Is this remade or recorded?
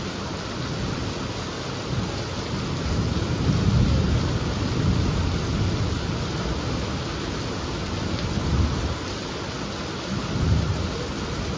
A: recorded